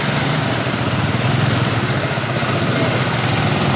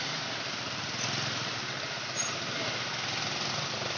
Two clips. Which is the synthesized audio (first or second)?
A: second